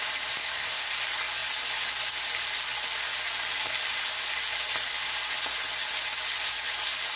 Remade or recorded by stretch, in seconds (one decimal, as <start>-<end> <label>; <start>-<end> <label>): 0.0-0.4 recorded; 0.4-0.9 remade; 0.9-7.2 recorded